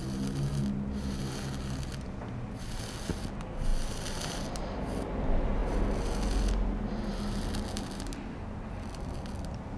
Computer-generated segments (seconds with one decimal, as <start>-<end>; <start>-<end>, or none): none